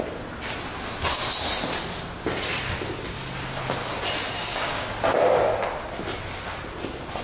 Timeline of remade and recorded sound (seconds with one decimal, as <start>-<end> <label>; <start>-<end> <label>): 0.0-4.4 recorded; 4.4-4.9 remade; 4.9-7.2 recorded